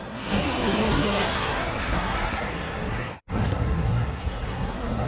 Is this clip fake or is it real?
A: fake